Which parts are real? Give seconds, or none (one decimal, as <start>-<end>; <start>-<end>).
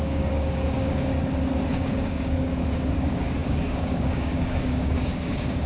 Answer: 1.1-1.7